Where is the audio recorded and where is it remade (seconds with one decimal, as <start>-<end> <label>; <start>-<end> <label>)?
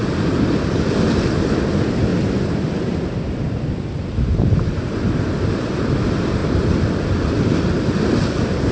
0.0-2.1 recorded; 2.1-3.2 remade; 3.2-8.7 recorded